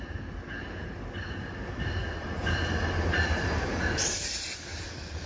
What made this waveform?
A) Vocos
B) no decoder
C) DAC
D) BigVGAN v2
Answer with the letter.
B